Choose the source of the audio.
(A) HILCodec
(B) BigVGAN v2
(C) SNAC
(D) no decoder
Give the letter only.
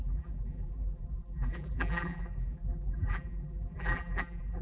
B